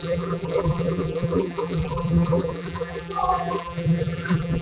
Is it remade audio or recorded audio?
remade